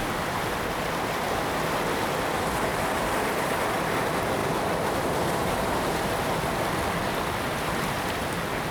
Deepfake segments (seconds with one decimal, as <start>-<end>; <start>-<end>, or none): 2.7-3.5; 4.4-5.7